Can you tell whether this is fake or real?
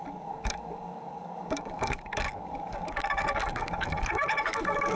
fake